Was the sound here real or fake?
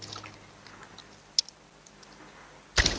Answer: real